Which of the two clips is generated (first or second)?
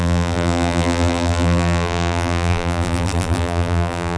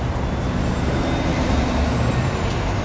first